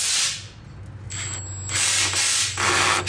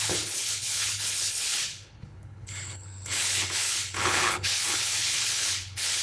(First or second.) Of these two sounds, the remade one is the second